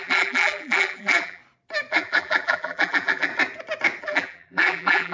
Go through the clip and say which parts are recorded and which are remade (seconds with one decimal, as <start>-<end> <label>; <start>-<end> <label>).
0.0-1.4 remade; 1.4-1.9 recorded; 1.9-3.3 remade; 3.3-4.0 recorded; 4.0-5.1 remade